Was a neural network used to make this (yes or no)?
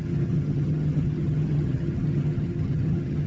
yes